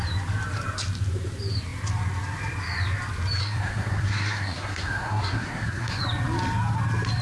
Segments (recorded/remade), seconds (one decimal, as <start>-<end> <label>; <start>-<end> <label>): 0.0-3.4 recorded; 3.4-6.0 remade; 6.0-7.2 recorded